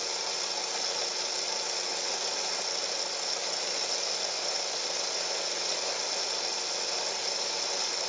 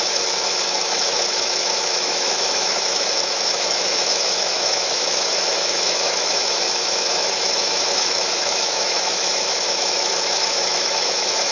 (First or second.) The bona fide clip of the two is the first